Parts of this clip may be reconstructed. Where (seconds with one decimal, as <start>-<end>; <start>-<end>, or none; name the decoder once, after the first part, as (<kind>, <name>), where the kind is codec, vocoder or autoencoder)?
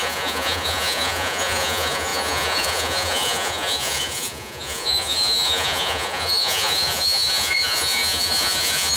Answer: 0.0-9.0 (vocoder, Vocos)